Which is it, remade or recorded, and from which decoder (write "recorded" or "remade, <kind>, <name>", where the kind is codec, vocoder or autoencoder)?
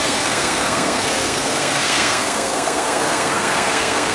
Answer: remade, codec, SNAC